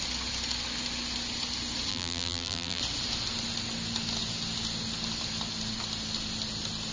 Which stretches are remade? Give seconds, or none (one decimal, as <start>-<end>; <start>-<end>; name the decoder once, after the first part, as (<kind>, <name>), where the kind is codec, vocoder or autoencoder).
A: 1.9-2.8 (vocoder, BigVGAN v2)